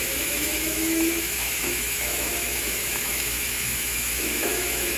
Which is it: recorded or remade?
remade